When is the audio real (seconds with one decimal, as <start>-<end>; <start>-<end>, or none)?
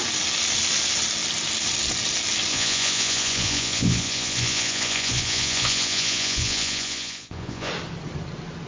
0.0-2.5; 7.7-8.7